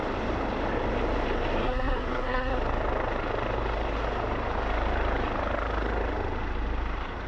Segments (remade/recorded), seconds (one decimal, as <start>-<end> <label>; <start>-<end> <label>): 0.0-1.6 recorded; 1.6-2.6 remade; 2.6-7.3 recorded